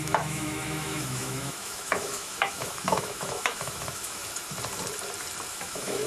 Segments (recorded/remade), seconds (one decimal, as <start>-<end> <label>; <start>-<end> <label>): 0.0-4.2 remade; 4.2-5.5 recorded; 5.5-6.1 remade